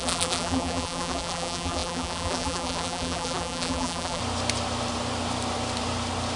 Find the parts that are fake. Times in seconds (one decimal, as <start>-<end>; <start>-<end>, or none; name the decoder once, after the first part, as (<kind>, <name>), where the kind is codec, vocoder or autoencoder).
0.0-4.2 (vocoder, BigVGAN v2)